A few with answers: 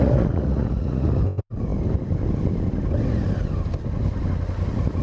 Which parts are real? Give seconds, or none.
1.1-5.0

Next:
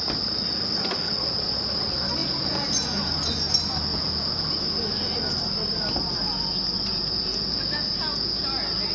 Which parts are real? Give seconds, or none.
0.0-2.2; 3.1-3.9; 4.6-6.9; 8.4-8.9